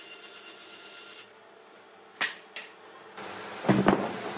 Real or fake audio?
real